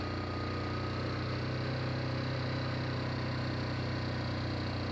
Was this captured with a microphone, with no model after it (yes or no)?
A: yes